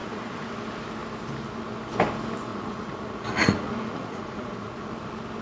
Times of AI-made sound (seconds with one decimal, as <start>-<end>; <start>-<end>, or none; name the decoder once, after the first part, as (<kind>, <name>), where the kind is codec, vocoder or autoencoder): 0.0-0.5 (vocoder, Vocos); 2.5-4.9